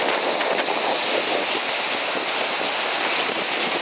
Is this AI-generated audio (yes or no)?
no